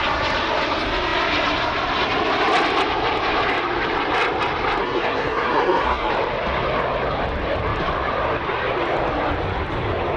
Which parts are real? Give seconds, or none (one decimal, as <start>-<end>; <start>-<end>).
0.0-4.8; 6.1-10.2